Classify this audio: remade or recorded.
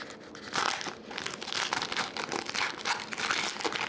recorded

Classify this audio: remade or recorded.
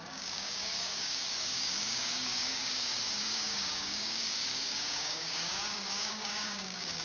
remade